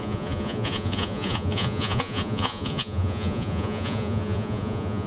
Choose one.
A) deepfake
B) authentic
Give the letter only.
A